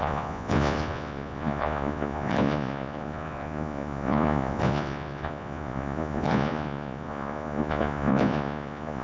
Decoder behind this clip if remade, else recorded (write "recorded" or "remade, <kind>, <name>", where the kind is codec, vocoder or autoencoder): remade, vocoder, Vocos